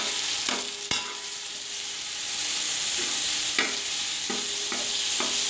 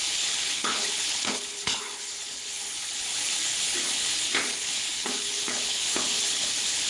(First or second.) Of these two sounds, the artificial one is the second